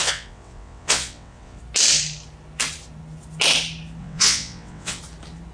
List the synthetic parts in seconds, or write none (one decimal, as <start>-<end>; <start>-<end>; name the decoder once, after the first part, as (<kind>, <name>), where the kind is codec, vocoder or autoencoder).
0.0-1.6 (vocoder, WaveNeXt); 4.0-5.0